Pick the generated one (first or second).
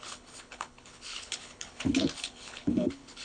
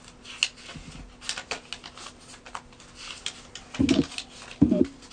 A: first